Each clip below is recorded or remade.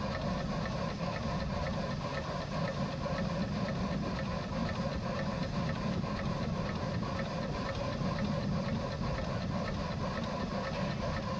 recorded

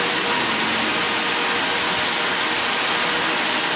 recorded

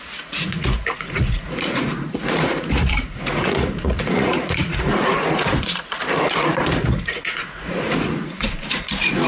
remade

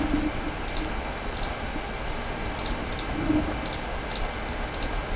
recorded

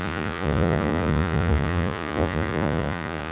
remade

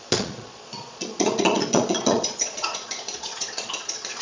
remade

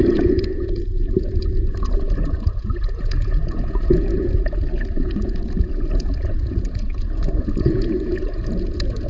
remade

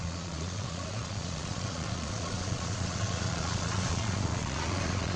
remade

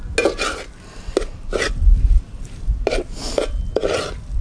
recorded